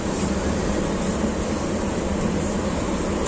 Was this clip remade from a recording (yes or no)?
no